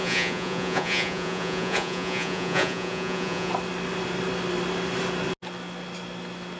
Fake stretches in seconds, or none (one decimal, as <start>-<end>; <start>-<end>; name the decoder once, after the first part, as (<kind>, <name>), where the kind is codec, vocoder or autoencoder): 0.0-3.5 (vocoder, Vocos)